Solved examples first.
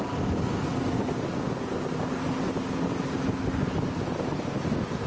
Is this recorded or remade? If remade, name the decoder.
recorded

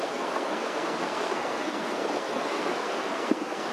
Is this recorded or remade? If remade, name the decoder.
remade, codec, SNAC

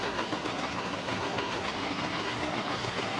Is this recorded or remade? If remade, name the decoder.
remade, codec, SNAC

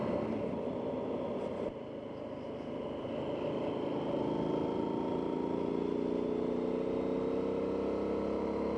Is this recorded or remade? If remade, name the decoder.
recorded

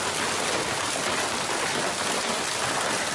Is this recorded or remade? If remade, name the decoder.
recorded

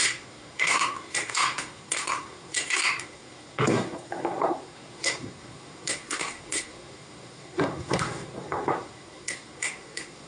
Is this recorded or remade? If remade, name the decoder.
remade, codec, SNAC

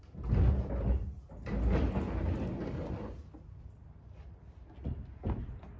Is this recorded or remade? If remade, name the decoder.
recorded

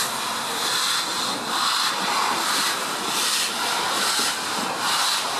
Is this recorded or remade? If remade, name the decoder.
recorded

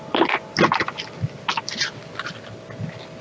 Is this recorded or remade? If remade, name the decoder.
recorded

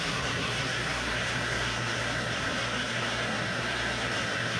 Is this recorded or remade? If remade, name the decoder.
remade, codec, SNAC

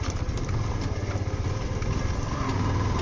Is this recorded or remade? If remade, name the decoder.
recorded